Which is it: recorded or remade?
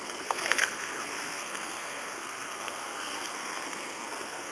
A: remade